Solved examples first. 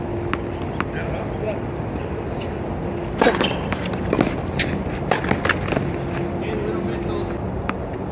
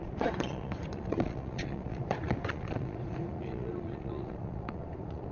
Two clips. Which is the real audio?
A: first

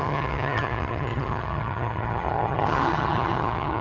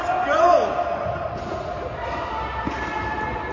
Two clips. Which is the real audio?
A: second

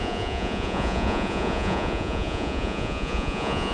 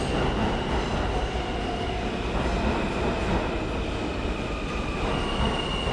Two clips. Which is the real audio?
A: second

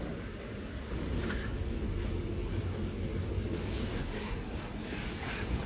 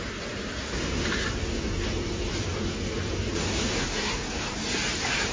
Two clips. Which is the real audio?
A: second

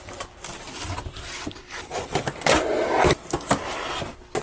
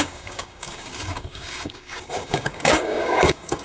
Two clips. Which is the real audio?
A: first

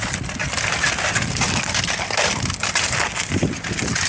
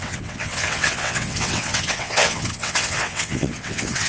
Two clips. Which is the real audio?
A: first